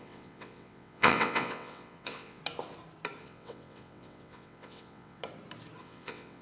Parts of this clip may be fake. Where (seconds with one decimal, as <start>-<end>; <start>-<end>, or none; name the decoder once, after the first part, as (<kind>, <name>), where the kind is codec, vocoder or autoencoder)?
0.0-2.4 (vocoder, WaveNeXt); 3.2-5.2; 5.8-6.4